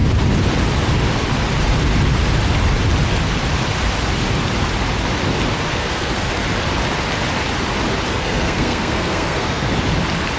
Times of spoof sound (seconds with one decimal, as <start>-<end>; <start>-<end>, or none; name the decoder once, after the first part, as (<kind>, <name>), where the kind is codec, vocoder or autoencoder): 5.7-6.3 (codec, SNAC); 8.1-9.7